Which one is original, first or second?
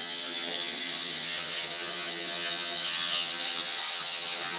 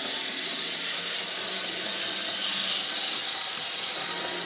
second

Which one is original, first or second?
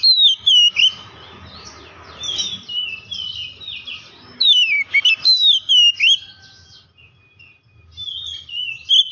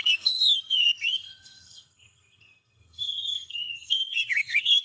first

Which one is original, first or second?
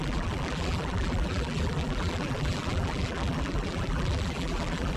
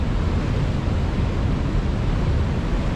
second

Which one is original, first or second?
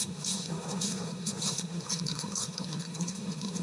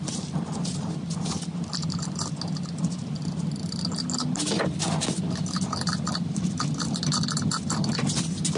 second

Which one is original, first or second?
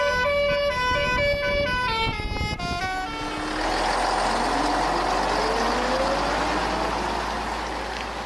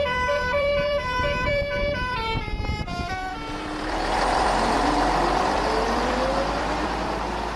first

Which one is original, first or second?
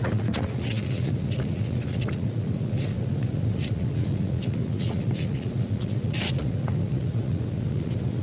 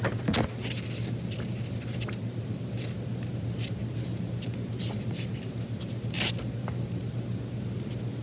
second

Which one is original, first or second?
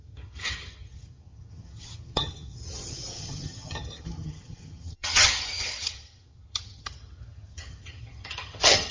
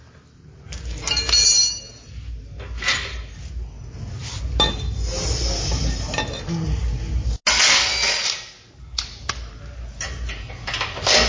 second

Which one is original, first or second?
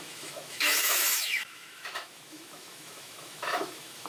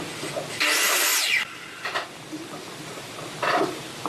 second